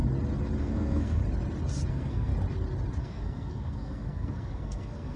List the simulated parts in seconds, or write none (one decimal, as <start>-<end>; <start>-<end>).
0.6-1.2; 1.9-2.3; 3.0-5.2